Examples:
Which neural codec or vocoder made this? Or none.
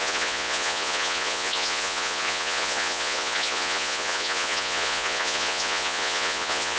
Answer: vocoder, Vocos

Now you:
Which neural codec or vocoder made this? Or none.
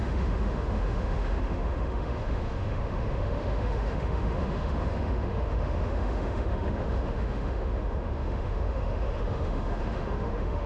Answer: autoencoder, DAC-VAE